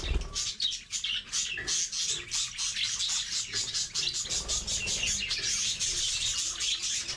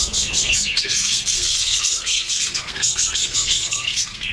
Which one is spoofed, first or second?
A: second